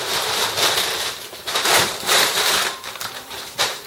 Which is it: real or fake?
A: fake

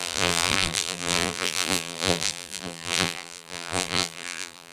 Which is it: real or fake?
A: fake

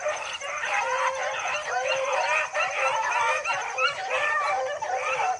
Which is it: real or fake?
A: fake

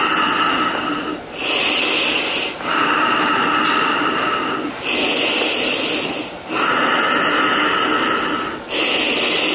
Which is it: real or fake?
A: real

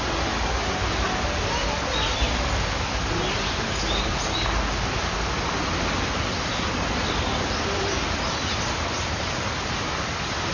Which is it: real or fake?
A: real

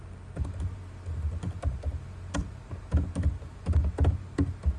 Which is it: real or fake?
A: real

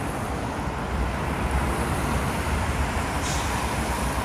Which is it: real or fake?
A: fake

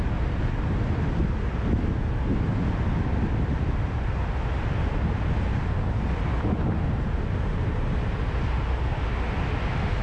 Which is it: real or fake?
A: real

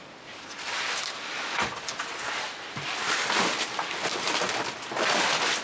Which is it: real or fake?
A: fake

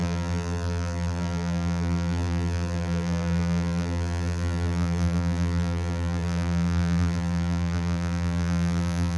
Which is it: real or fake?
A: fake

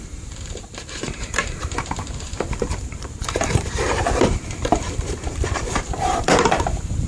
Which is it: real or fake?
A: fake